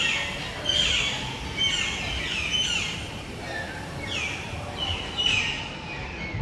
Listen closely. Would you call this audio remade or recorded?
recorded